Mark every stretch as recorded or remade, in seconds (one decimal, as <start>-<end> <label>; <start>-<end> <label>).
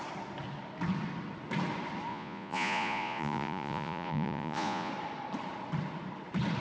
0.0-2.1 recorded; 2.1-4.9 remade; 4.9-6.6 recorded